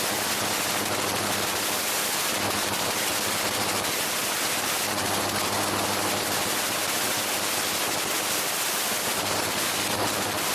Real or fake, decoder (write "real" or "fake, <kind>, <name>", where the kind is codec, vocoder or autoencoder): real